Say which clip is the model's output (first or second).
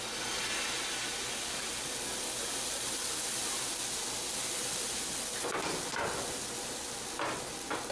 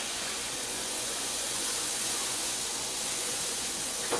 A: second